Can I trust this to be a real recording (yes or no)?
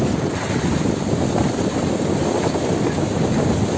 yes